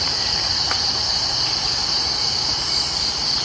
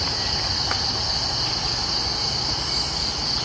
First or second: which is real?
second